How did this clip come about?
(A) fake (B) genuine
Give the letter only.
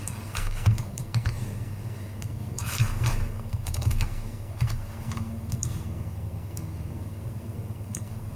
A